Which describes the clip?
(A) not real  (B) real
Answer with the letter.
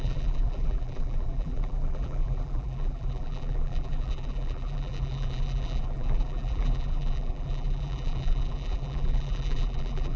A